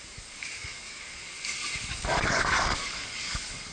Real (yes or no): no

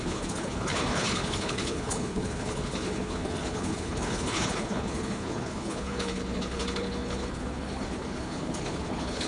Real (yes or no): no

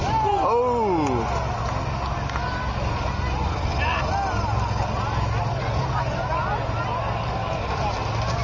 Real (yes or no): yes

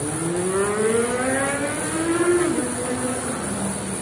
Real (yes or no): yes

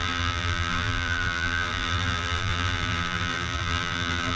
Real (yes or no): no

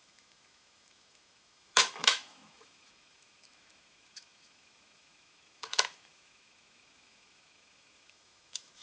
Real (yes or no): no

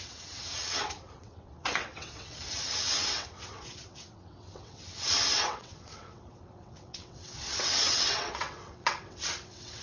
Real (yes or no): no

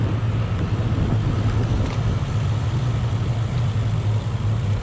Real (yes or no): yes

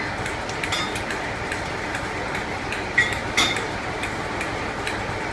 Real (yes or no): yes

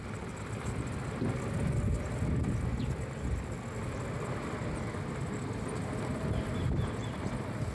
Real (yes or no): yes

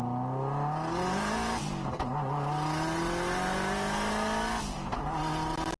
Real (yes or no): yes